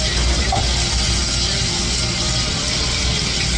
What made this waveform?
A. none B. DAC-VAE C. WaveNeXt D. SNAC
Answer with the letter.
A